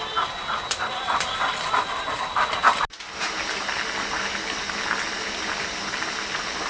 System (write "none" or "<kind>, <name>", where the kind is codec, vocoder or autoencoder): none